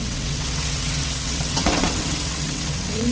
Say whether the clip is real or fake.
fake